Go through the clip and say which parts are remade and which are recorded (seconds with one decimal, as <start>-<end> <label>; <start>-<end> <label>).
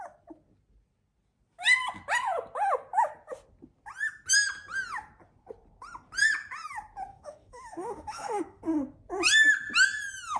0.0-7.1 recorded; 7.1-8.6 remade; 8.6-10.4 recorded